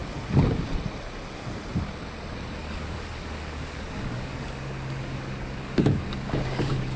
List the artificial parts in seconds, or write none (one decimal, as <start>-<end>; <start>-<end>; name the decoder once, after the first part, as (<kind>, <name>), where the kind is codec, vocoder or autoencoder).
2.6-7.0 (codec, DAC)

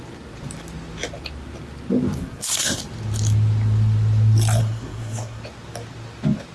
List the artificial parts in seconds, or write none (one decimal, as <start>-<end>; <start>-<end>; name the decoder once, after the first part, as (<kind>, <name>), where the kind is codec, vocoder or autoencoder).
2.2-2.8 (codec, SNAC); 4.6-5.4